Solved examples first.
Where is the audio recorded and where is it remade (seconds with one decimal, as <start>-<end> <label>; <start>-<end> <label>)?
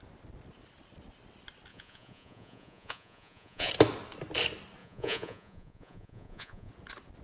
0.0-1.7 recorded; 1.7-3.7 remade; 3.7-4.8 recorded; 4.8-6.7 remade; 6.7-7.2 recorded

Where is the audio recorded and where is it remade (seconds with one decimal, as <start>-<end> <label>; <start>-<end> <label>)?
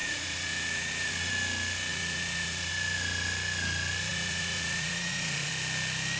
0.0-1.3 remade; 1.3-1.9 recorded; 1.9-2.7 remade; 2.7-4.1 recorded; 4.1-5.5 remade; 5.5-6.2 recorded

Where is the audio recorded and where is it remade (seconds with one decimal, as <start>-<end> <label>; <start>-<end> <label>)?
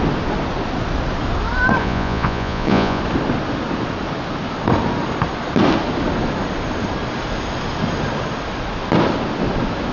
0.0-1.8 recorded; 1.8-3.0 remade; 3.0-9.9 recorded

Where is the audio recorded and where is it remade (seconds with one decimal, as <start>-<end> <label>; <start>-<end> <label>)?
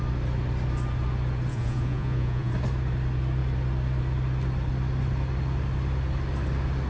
0.0-1.5 recorded; 1.5-2.5 remade; 2.5-6.9 recorded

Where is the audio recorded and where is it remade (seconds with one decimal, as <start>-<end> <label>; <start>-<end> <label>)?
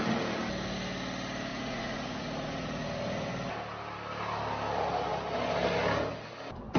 0.0-1.5 recorded; 1.5-3.3 remade; 3.3-6.8 recorded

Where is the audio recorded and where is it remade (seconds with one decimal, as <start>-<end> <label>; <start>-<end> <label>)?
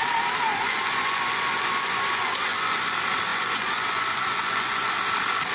0.0-0.5 recorded; 0.5-2.9 remade; 2.9-3.3 recorded; 3.3-4.9 remade; 4.9-5.5 recorded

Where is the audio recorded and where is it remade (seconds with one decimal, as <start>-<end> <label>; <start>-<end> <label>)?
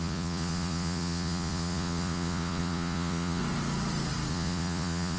0.0-3.4 remade; 3.4-4.3 recorded; 4.3-5.2 remade